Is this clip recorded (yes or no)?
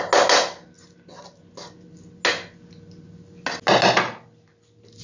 yes